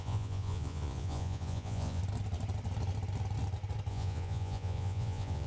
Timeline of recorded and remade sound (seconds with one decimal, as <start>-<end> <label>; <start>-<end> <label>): 0.0-2.0 remade; 2.0-3.9 recorded; 3.9-5.5 remade